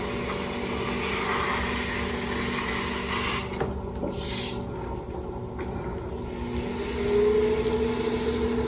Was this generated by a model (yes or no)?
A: no